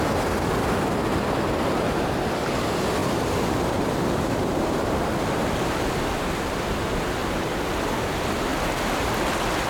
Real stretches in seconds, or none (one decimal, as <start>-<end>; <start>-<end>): 0.0-3.0; 6.0-7.2; 8.1-8.5; 9.1-9.7